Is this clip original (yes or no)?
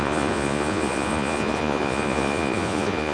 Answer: no